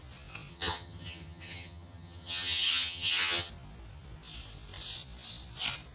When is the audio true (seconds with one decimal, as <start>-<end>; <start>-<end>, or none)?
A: 0.0-0.5; 3.5-5.9